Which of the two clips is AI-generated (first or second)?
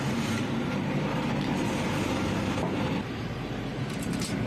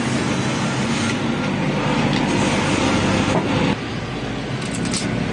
first